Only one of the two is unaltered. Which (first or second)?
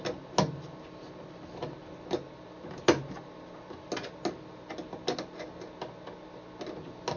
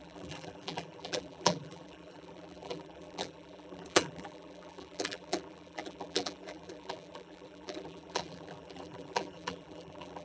first